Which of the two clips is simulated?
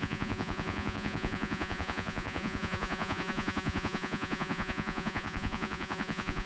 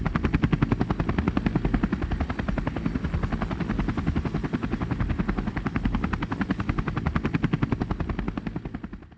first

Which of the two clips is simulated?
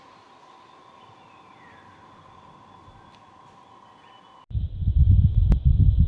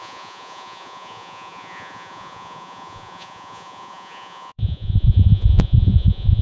second